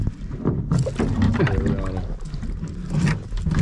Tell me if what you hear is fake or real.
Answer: real